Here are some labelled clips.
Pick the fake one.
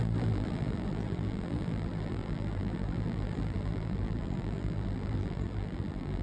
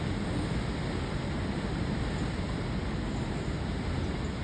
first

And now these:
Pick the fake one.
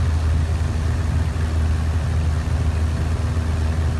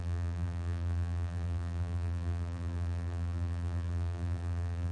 second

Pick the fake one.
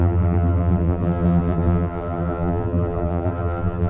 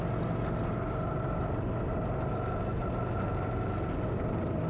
first